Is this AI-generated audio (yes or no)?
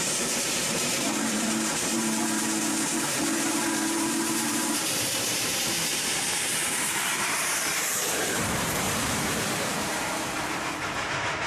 yes